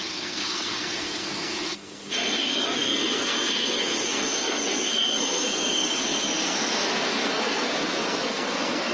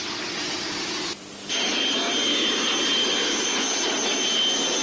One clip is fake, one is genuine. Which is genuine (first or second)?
second